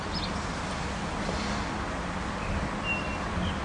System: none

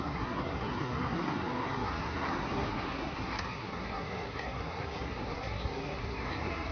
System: codec, SNAC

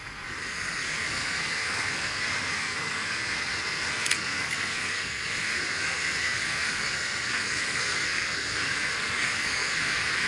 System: codec, SNAC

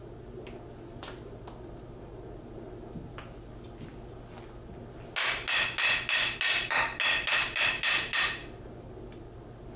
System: none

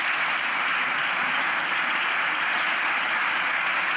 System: none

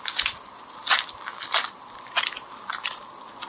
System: none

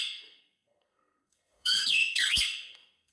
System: codec, SNAC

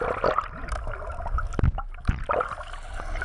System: none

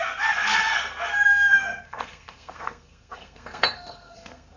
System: codec, SNAC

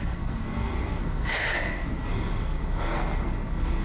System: codec, SNAC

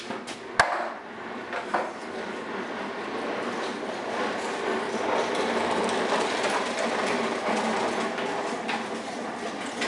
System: none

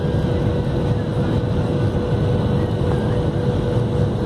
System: none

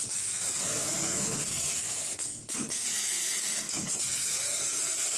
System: codec, SNAC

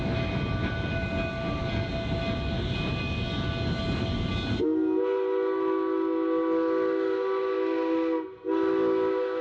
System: none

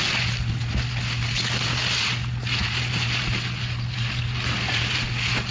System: none